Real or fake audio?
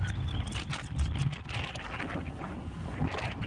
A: real